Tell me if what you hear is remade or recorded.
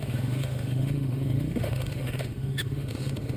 remade